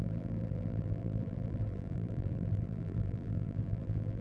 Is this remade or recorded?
remade